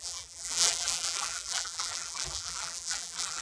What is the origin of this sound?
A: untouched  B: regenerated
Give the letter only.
B